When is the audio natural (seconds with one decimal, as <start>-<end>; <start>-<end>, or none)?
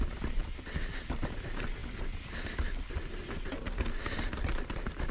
0.0-5.1